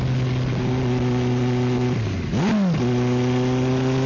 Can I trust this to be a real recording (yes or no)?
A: yes